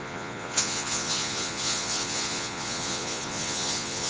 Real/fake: fake